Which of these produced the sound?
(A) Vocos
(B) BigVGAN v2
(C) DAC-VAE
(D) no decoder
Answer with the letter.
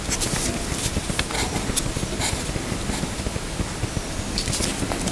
D